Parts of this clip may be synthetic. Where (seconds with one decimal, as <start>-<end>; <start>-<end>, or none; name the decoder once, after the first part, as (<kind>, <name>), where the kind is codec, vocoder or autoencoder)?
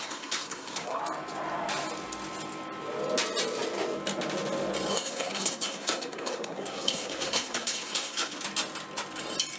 0.0-1.0 (codec, SNAC); 4.9-8.4